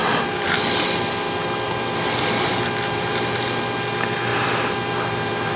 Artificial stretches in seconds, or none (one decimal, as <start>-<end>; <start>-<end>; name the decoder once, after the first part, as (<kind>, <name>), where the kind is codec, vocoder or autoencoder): 0.0-3.4 (vocoder, BigVGAN v2); 4.3-5.6

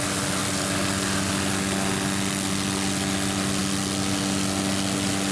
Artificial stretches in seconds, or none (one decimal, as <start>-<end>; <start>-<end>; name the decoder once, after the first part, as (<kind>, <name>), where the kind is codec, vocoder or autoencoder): none

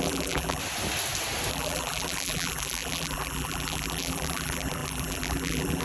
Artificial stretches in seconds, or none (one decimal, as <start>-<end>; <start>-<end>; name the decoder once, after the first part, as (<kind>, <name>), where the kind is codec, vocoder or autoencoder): 0.0-0.6 (vocoder, BigVGAN v2); 1.5-5.8

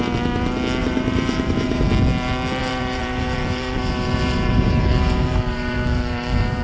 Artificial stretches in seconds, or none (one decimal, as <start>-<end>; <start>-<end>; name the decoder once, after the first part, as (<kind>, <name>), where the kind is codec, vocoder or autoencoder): 0.8-1.8 (vocoder, BigVGAN v2); 2.6-6.6

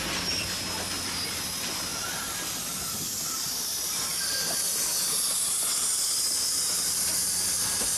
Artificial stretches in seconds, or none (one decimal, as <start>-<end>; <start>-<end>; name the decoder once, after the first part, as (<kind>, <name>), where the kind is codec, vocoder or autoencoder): none

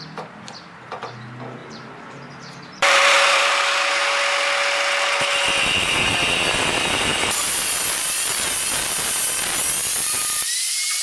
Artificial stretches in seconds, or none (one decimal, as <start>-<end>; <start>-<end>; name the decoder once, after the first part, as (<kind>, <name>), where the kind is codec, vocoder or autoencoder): 1.6-3.5 (vocoder, BigVGAN v2); 7.1-7.7; 9.8-11.0